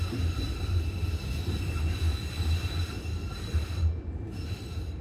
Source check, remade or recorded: recorded